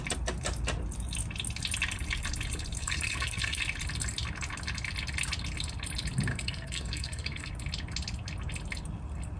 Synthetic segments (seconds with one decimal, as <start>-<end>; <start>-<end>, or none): 2.8-3.6; 6.3-7.5